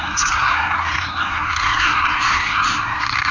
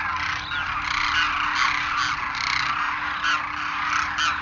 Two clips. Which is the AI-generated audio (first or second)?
first